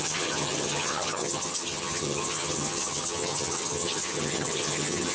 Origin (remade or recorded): remade